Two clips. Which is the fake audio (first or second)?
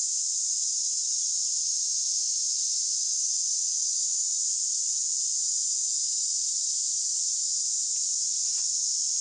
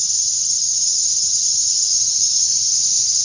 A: second